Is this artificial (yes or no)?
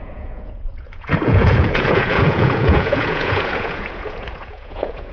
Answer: yes